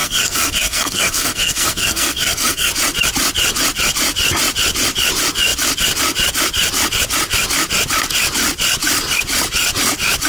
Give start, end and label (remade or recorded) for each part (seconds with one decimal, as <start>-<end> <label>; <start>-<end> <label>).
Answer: 0.0-2.7 remade; 2.7-10.3 recorded